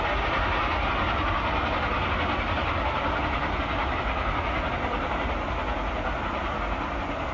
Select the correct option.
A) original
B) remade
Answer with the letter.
A